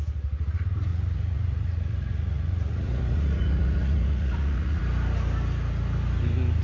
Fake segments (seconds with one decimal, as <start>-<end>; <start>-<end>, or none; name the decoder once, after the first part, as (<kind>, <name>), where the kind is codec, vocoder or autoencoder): 0.9-4.8 (vocoder, Vocos)